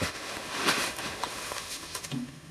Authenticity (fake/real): fake